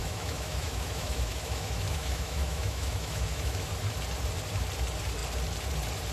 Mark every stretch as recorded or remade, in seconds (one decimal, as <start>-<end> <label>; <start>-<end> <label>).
0.0-3.7 remade; 3.7-6.1 recorded